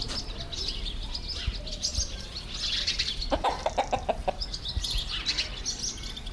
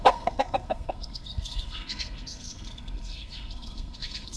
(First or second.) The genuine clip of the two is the first